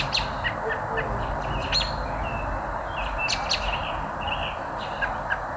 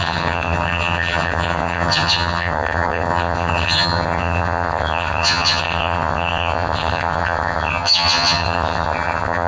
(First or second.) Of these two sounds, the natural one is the first